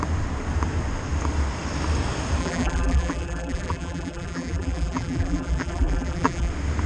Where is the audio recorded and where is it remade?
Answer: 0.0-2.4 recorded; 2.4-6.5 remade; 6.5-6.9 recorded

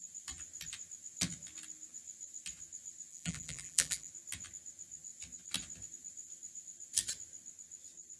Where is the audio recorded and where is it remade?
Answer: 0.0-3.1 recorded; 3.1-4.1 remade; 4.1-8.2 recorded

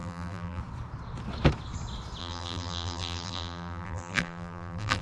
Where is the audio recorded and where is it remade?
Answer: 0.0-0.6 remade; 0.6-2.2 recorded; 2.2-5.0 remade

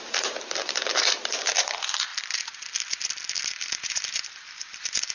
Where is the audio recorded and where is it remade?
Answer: 0.0-2.1 remade; 2.1-3.5 recorded; 3.5-5.1 remade

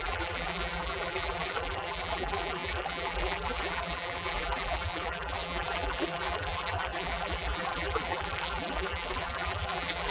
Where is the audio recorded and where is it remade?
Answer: 0.0-10.1 remade

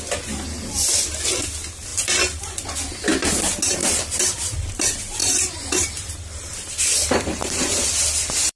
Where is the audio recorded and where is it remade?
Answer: 0.0-1.9 recorded; 1.9-2.5 remade; 2.5-3.8 recorded; 3.8-4.7 remade; 4.7-5.2 recorded; 5.2-6.7 remade; 6.7-7.4 recorded; 7.4-8.6 remade